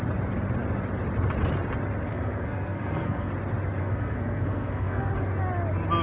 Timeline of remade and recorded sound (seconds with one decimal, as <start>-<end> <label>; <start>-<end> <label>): 0.0-2.1 recorded; 2.1-3.3 remade; 3.3-3.8 recorded; 3.8-5.1 remade; 5.1-6.0 recorded